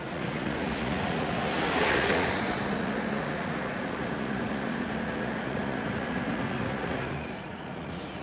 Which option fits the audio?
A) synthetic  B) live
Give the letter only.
A